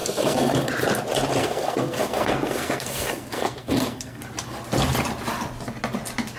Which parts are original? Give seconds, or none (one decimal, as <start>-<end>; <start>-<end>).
0.7-1.4; 4.2-6.4